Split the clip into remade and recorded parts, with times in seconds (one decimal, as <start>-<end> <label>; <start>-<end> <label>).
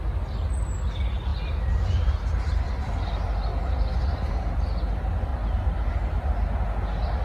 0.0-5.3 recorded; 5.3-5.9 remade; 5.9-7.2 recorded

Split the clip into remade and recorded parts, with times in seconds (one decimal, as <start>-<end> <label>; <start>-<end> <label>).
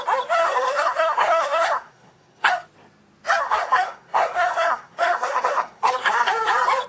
0.0-0.4 recorded; 0.4-2.5 remade; 2.5-3.4 recorded; 3.4-6.3 remade; 6.3-6.9 recorded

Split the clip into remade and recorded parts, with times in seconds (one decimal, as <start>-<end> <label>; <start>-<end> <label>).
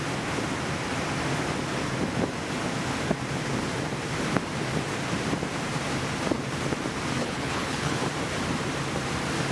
0.0-7.2 recorded; 7.2-8.0 remade; 8.0-9.5 recorded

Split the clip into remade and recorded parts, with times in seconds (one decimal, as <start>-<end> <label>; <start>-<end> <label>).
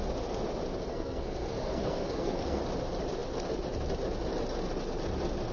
0.0-0.9 recorded; 0.9-2.6 remade; 2.6-5.5 recorded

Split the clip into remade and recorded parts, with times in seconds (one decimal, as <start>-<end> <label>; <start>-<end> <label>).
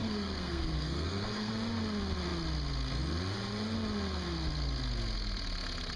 0.0-1.5 remade; 1.5-6.0 recorded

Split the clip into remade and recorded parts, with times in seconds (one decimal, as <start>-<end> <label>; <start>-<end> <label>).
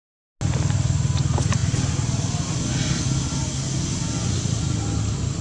0.0-5.4 recorded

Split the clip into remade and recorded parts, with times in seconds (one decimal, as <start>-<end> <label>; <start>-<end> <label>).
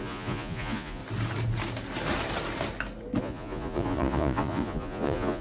0.0-1.0 remade; 1.0-3.2 recorded; 3.2-5.4 remade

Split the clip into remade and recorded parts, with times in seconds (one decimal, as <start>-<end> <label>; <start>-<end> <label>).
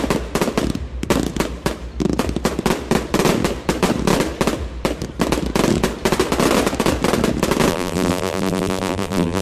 0.0-7.7 recorded; 7.7-9.4 remade